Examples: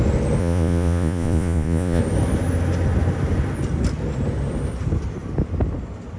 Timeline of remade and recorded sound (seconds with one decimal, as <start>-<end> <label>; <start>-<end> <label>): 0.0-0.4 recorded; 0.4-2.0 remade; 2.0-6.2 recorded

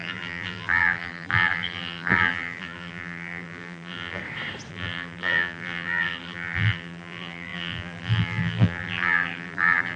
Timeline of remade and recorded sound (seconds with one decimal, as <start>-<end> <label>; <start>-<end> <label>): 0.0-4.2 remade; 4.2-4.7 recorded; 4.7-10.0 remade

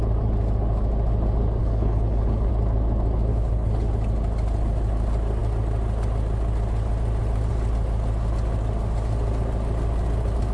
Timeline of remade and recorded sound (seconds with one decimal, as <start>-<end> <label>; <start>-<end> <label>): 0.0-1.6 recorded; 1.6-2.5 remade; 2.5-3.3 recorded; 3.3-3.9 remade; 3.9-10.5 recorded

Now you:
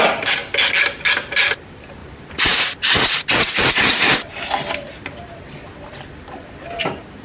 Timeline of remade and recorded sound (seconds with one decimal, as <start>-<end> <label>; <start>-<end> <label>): 0.0-7.2 recorded

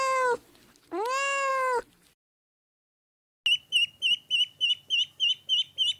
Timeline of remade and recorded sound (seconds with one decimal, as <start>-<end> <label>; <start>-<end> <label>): 0.0-6.0 recorded

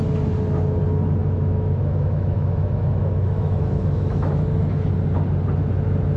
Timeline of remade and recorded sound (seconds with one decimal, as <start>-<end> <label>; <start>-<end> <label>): 0.0-1.2 recorded; 1.2-4.9 remade; 4.9-6.2 recorded